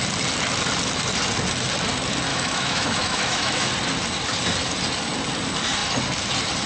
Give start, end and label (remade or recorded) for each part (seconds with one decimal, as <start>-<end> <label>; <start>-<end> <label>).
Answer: 0.0-2.3 recorded; 2.3-3.7 remade; 3.7-6.7 recorded